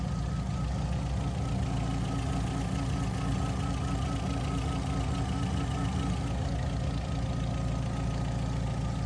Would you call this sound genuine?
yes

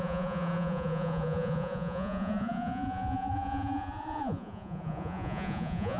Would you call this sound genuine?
no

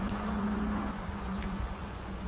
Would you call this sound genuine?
no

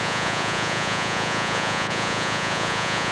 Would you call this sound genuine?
no